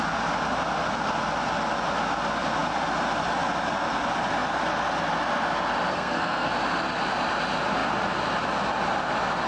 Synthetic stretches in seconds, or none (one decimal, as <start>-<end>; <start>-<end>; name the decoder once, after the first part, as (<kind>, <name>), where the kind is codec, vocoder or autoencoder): 5.9-6.5 (codec, SNAC)